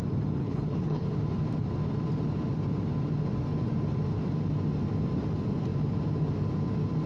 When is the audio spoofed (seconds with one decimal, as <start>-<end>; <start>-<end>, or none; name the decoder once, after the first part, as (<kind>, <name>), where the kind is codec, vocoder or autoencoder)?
0.4-1.1 (codec, HILCodec)